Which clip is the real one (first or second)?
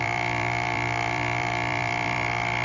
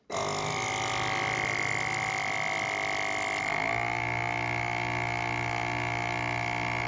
second